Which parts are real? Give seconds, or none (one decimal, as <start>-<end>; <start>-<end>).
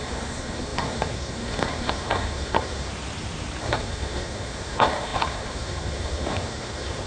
2.9-3.6